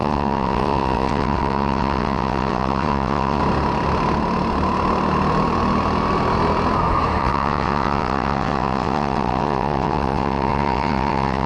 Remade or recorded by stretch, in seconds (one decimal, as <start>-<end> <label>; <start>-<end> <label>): 0.0-3.4 remade; 3.4-7.2 recorded; 7.2-11.5 remade